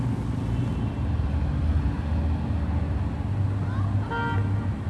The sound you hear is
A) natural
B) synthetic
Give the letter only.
A